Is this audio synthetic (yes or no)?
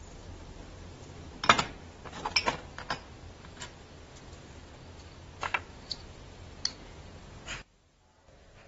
no